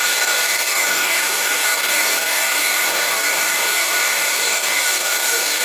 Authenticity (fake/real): fake